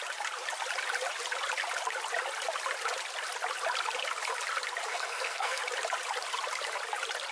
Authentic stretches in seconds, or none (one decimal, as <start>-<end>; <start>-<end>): 0.0-4.9; 5.6-7.3